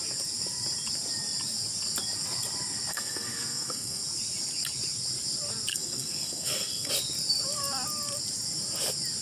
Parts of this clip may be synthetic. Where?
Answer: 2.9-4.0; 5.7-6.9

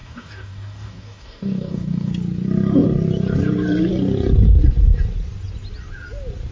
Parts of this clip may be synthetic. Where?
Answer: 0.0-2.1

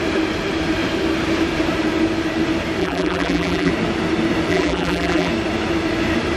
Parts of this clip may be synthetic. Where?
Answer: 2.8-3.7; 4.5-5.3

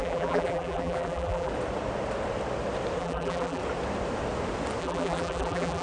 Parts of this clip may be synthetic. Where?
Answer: 0.0-1.5; 3.0-3.6; 4.8-5.8

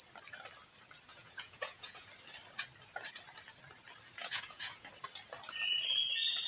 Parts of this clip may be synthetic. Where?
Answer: 1.1-2.1; 4.2-4.9

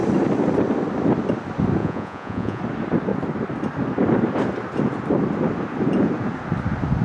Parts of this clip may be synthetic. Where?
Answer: 1.8-2.6